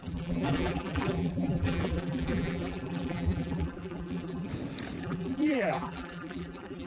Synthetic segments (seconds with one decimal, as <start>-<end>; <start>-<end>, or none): 0.0-4.5; 5.0-6.9